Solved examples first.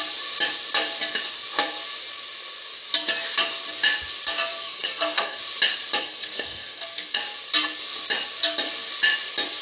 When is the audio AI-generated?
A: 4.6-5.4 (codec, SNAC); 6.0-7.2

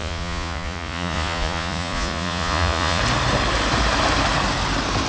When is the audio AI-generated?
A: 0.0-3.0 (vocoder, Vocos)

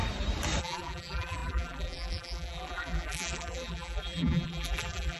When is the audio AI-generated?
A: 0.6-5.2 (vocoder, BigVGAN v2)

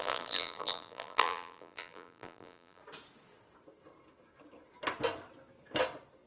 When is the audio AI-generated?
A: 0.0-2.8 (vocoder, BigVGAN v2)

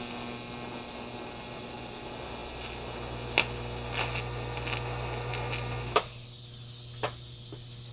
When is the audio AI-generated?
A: none

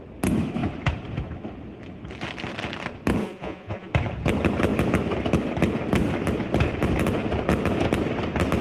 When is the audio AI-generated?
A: 3.2-3.9 (vocoder, Vocos)

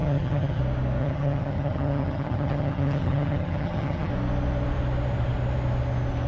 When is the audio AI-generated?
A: 0.0-0.6 (vocoder, HiFi-GAN); 1.0-4.1

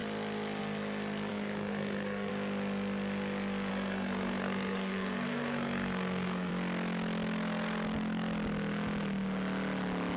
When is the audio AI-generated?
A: 1.3-2.3 (codec, SNAC); 3.7-6.5